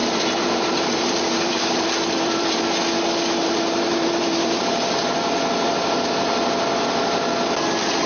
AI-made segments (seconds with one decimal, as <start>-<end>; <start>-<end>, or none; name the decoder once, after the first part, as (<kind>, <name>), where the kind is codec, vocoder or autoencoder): 0.0-2.6 (vocoder, BigVGAN v2); 3.4-5.7